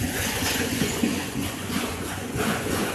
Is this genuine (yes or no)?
no